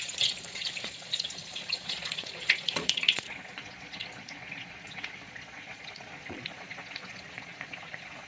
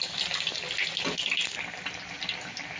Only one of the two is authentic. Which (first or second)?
second